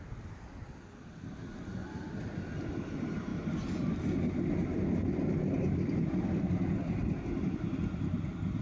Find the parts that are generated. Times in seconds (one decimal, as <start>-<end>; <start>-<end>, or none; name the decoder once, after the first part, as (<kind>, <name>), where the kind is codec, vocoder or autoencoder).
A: none